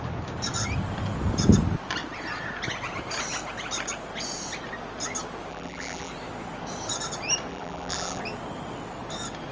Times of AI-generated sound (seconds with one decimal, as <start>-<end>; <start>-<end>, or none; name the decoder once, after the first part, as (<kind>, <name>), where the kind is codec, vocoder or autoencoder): 5.5-6.1 (vocoder, BigVGAN v2); 7.5-8.2